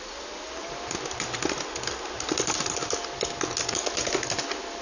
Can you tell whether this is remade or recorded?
recorded